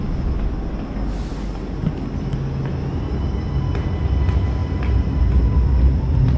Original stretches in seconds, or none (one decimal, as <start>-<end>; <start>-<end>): 0.0-6.4